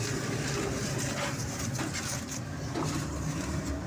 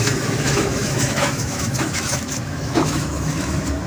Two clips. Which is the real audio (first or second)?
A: first